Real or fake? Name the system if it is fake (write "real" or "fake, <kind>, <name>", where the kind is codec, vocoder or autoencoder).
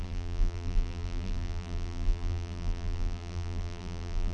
fake, vocoder, BigVGAN v2